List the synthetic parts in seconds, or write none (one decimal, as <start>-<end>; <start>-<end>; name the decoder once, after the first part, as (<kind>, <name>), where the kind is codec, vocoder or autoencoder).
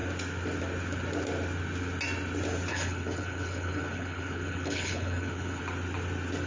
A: 2.7-5.6 (codec, HILCodec)